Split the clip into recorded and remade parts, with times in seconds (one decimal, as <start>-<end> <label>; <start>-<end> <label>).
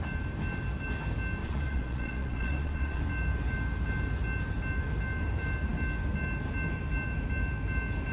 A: 0.0-1.4 recorded; 1.4-3.0 remade; 3.0-8.1 recorded